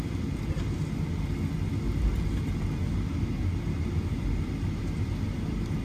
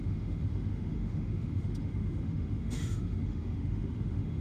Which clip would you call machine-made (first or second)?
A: second